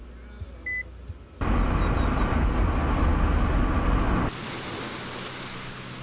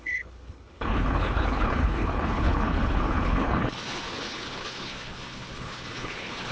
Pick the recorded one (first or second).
first